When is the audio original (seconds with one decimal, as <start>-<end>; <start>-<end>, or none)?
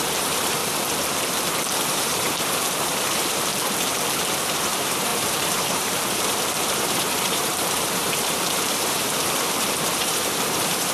0.6-1.7; 3.5-4.4